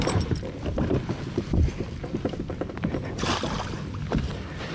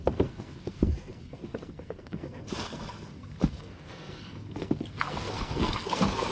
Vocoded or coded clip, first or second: second